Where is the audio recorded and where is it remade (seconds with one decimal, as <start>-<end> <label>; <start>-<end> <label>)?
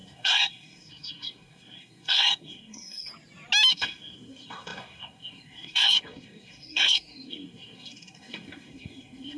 0.0-3.1 remade; 3.1-3.7 recorded; 3.7-9.4 remade